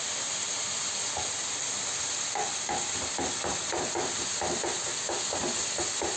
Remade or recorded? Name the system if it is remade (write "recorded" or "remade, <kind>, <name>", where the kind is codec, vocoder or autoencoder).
recorded